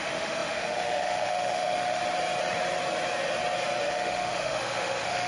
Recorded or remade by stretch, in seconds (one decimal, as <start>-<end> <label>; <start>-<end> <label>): 0.0-2.0 remade; 2.0-3.8 recorded; 3.8-5.3 remade